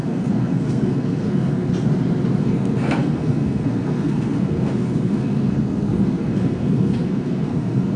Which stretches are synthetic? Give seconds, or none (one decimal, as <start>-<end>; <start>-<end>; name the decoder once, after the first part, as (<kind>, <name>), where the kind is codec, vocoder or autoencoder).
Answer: 0.0-1.7 (codec, SNAC); 2.4-8.0